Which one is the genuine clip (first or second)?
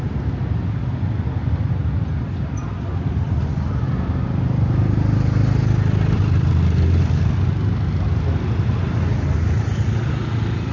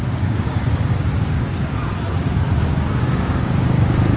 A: first